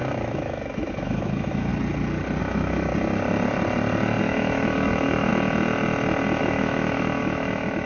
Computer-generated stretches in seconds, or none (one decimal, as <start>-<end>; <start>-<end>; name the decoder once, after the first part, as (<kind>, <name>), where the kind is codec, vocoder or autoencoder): 0.0-1.7 (autoencoder, DAC-VAE); 2.4-2.9; 4.2-5.3; 6.4-7.9